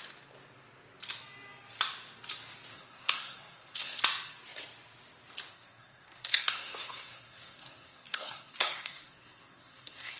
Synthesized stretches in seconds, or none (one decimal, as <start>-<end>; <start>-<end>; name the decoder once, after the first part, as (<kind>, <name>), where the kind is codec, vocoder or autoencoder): 2.7-4.0 (codec, SNAC); 5.5-10.2